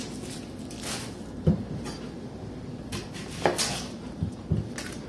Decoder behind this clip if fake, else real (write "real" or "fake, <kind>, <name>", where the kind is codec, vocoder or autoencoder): real